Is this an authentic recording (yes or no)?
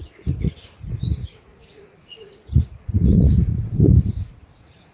no